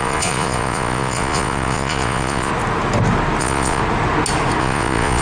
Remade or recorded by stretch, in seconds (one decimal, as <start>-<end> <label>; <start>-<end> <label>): 0.0-2.5 remade; 2.5-3.4 recorded; 3.4-3.8 remade; 3.8-4.6 recorded; 4.6-5.2 remade